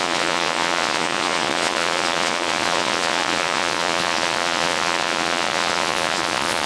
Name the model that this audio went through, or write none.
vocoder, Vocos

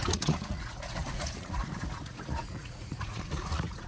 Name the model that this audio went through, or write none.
vocoder, Vocos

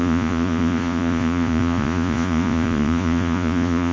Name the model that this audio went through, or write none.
vocoder, Vocos